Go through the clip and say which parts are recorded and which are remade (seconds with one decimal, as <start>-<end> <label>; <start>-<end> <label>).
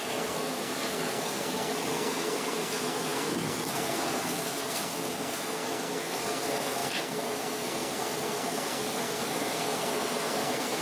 0.0-10.8 remade